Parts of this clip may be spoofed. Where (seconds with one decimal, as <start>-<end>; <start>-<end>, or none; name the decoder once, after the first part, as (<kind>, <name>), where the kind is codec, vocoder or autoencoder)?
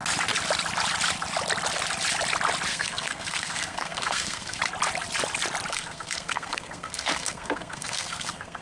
2.7-4.6 (codec, SNAC); 5.7-8.6